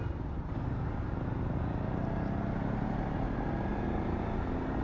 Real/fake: real